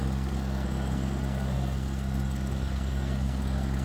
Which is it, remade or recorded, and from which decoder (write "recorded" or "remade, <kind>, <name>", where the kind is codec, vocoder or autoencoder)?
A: remade, codec, SNAC